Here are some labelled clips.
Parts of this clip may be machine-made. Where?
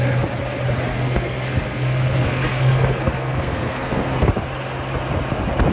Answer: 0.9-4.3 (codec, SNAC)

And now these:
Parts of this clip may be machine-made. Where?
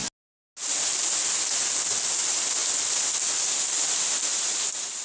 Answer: none